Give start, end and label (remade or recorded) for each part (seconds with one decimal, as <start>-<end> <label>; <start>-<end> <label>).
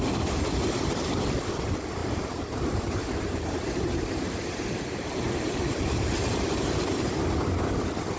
0.0-2.0 recorded; 2.0-6.5 remade; 6.5-8.2 recorded